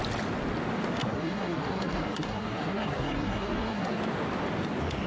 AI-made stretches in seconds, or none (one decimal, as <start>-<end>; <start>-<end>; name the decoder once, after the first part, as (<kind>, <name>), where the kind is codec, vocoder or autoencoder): 1.0-4.0 (codec, SNAC)